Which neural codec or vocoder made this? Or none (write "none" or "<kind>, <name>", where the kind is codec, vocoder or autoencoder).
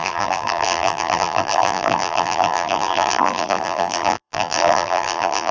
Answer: vocoder, BigVGAN v2